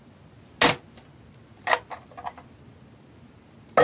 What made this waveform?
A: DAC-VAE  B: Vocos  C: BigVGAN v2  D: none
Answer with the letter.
D